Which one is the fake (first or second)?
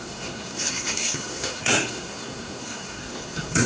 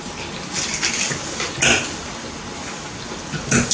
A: first